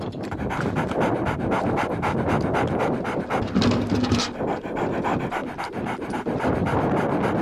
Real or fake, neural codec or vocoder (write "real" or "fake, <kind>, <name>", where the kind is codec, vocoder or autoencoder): real